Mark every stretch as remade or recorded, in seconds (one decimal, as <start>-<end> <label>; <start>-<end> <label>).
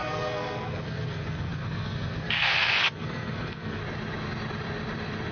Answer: 0.0-3.8 remade; 3.8-5.3 recorded